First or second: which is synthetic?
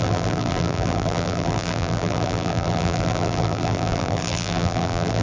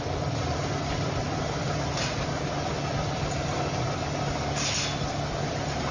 first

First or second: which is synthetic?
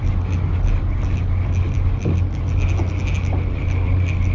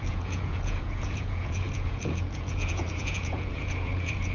second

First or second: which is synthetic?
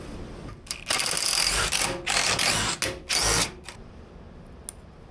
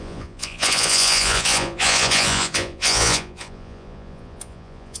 second